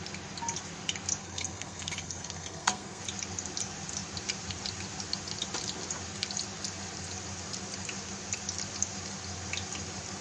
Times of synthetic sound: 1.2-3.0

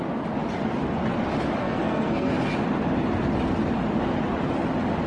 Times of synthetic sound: 1.6-2.4

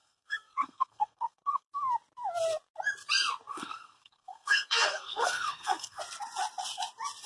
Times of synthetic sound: 0.0-1.7; 3.5-6.0

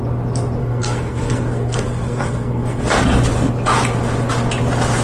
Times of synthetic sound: 0.6-2.8

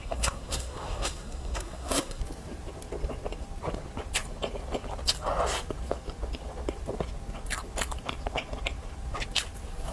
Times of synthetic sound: 0.0-2.2

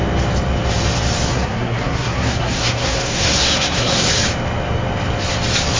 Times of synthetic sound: 1.3-4.1

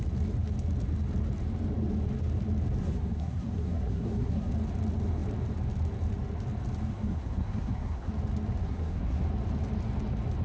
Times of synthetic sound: 2.8-4.5; 6.9-8.1; 8.6-9.2